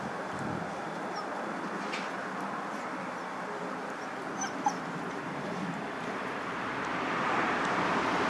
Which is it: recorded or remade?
recorded